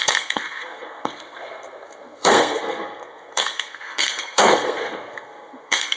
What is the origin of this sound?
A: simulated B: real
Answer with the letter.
A